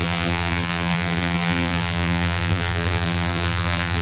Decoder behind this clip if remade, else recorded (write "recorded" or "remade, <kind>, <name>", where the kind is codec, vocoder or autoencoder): remade, vocoder, BigVGAN v2